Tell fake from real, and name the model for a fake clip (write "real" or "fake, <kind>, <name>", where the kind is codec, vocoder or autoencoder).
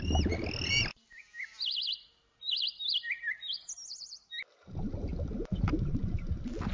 real